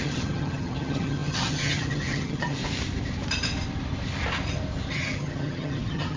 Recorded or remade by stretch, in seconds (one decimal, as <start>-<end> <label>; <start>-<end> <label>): 0.0-2.6 remade; 2.6-4.9 recorded; 4.9-6.2 remade